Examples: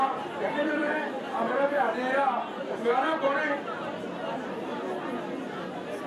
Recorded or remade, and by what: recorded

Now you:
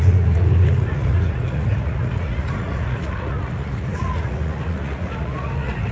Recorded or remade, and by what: remade, vocoder, Vocos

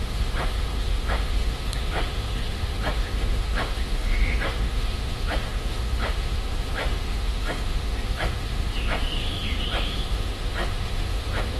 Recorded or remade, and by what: remade, autoencoder, DAC-VAE